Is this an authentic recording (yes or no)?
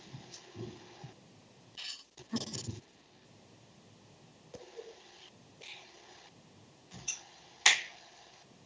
yes